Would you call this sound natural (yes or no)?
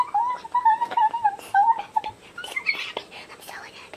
yes